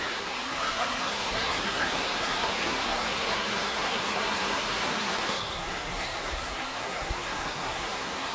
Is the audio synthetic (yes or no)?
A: yes